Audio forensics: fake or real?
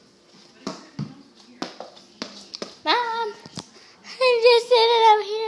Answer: real